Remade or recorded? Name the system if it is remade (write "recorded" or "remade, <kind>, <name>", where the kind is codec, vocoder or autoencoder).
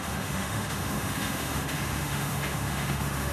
remade, autoencoder, DAC-VAE